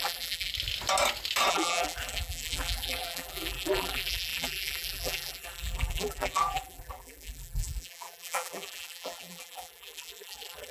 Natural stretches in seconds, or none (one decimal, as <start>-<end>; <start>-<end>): 0.5-1.5